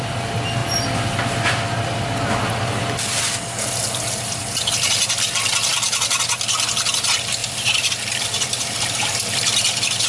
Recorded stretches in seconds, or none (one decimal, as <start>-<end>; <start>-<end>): 0.0-5.7; 6.3-7.4